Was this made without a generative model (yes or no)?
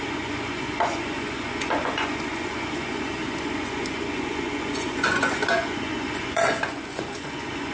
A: no